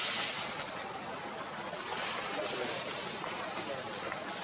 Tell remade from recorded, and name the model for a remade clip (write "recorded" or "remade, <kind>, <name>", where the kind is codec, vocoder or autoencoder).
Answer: recorded